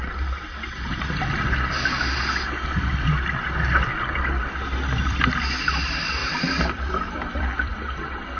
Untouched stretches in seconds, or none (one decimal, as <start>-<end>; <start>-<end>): 0.0-6.2; 7.7-8.4